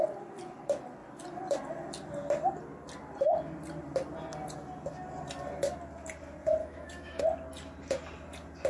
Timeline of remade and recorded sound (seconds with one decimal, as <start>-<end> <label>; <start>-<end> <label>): 0.0-6.6 recorded; 6.6-7.2 remade; 7.2-8.7 recorded